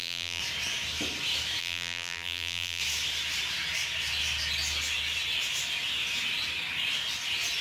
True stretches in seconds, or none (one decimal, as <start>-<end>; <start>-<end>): 0.4-1.6; 2.8-7.6